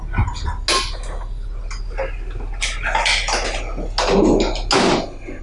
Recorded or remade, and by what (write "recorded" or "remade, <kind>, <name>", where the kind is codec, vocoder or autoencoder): recorded